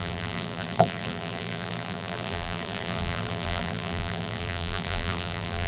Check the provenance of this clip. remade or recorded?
remade